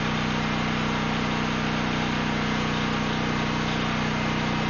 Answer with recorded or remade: recorded